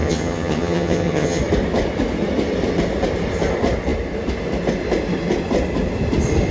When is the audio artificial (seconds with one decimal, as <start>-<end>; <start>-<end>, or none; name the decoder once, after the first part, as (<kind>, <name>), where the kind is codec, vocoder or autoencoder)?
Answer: 0.0-1.4 (vocoder, HiFi-GAN)